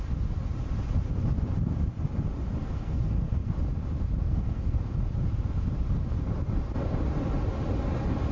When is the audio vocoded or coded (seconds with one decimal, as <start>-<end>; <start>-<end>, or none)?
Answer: 2.6-3.5; 4.2-4.8